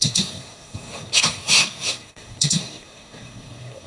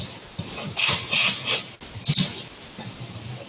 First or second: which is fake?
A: first